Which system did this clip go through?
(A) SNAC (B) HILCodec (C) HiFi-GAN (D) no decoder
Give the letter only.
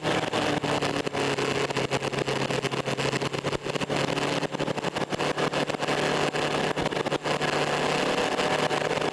D